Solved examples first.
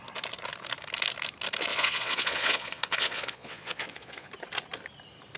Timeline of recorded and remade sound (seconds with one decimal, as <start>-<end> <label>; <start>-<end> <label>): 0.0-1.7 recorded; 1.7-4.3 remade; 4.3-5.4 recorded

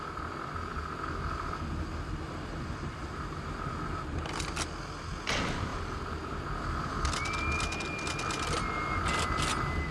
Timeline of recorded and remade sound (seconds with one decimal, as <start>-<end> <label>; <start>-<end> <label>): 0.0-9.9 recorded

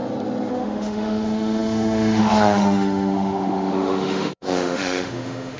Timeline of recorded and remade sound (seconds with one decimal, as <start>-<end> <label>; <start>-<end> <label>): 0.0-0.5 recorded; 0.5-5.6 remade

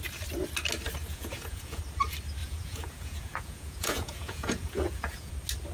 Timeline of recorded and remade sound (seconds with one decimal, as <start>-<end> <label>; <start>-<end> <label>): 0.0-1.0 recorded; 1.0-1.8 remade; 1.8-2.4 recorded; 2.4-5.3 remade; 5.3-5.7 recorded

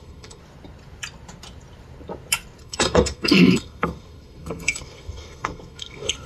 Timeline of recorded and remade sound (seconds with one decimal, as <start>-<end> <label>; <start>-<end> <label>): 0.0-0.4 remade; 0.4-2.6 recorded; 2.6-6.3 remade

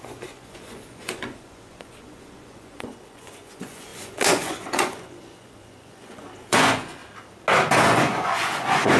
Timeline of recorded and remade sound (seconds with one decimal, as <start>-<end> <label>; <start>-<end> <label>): 0.0-7.0 remade; 7.0-7.8 recorded; 7.8-9.0 remade

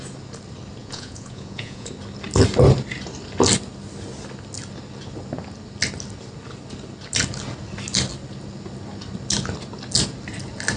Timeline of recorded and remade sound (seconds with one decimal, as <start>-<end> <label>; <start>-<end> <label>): 0.0-0.8 recorded; 0.8-1.9 remade; 1.9-10.8 recorded